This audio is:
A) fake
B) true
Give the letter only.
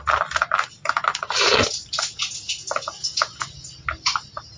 B